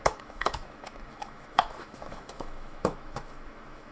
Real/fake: fake